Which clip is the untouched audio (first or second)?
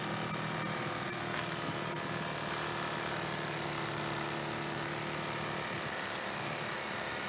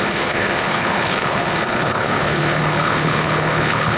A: first